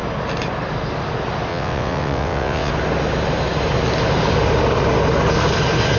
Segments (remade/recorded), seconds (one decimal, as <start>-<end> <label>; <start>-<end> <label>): 0.0-1.5 recorded; 1.5-2.7 remade; 2.7-6.0 recorded